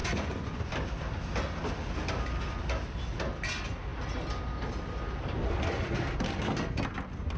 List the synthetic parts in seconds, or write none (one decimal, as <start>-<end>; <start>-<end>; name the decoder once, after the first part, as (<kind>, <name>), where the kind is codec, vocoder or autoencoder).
0.0-0.7 (vocoder, Vocos)